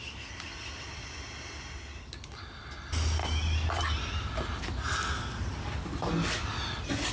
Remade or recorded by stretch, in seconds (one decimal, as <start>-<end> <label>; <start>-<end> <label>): 0.0-3.2 recorded; 3.2-3.8 remade; 3.8-7.1 recorded